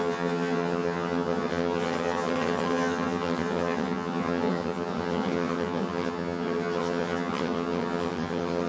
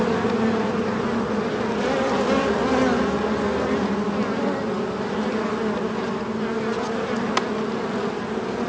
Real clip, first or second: second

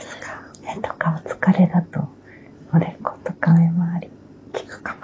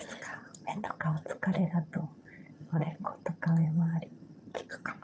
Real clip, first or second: first